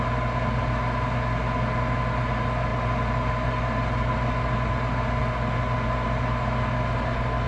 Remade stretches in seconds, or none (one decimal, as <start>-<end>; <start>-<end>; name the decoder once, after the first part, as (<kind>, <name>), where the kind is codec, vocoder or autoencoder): none